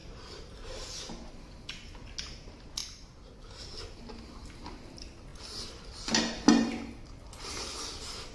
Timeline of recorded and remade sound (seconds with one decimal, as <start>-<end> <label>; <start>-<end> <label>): 0.0-0.9 remade; 0.9-8.3 recorded

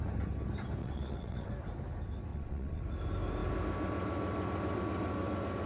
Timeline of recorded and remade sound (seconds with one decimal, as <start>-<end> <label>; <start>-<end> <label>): 0.0-0.8 recorded; 0.8-1.5 remade; 1.5-2.3 recorded; 2.3-2.8 remade; 2.8-5.7 recorded

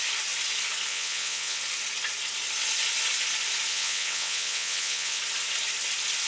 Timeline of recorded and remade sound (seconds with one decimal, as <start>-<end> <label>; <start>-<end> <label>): 0.0-0.9 recorded; 0.9-1.6 remade; 1.6-3.7 recorded; 3.7-5.2 remade; 5.2-6.3 recorded

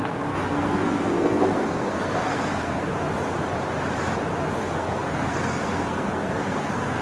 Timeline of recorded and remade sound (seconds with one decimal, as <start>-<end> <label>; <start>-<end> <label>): 0.0-2.9 remade; 2.9-4.6 recorded; 4.6-7.0 remade

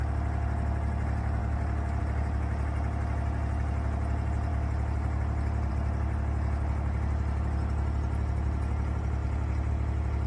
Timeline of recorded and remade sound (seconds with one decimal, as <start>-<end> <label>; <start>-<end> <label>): 0.0-1.4 recorded; 1.4-2.0 remade; 2.0-10.3 recorded

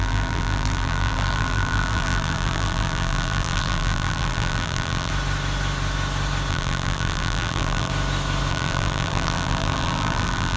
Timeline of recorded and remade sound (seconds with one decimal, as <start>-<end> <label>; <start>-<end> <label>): 0.0-5.1 remade; 5.1-6.5 recorded; 6.5-7.9 remade; 7.9-8.5 recorded; 8.5-10.6 remade

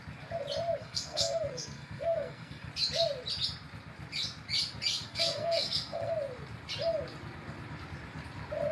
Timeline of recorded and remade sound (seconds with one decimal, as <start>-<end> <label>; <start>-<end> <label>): 0.0-0.8 recorded; 0.8-2.7 remade; 2.7-5.0 recorded; 5.0-6.1 remade; 6.1-8.7 recorded

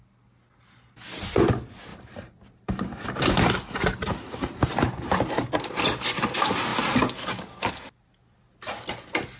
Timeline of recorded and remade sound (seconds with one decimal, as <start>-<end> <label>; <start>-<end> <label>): 0.0-1.9 recorded; 1.9-5.2 remade; 5.2-9.4 recorded